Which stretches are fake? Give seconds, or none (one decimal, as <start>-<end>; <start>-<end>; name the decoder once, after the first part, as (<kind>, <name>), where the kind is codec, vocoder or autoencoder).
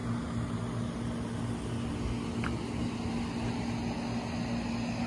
none